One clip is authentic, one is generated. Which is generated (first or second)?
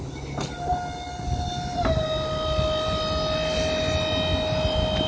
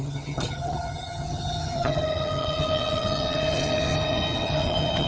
second